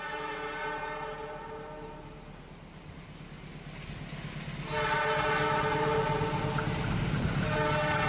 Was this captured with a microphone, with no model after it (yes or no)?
yes